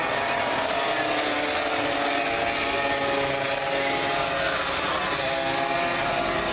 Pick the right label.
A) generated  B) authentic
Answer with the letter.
B